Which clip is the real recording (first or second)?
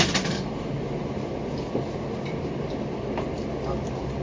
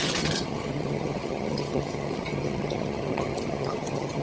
first